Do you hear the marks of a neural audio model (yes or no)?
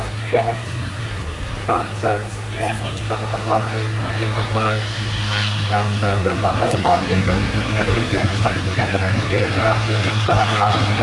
yes